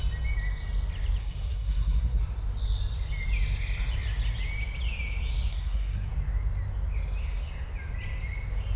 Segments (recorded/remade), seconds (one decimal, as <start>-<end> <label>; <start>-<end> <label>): 0.0-1.2 recorded; 1.2-2.2 remade; 2.2-5.5 recorded; 5.5-6.1 remade; 6.1-8.8 recorded